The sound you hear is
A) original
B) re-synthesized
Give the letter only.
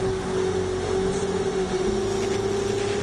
A